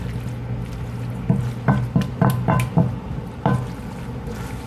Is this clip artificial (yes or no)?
no